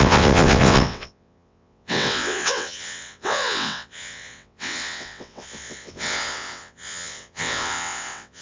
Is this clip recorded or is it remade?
remade